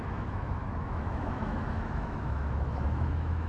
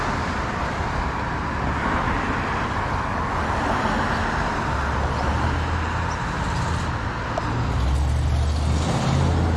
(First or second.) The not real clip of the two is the first